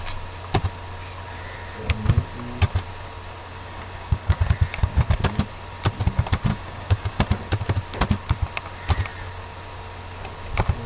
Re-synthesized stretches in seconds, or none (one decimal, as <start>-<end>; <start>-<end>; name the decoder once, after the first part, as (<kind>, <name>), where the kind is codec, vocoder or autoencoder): 3.4-4.4 (codec, DAC); 6.5-7.2